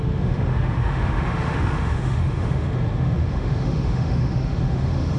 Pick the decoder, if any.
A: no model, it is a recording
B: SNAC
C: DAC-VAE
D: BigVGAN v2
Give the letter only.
C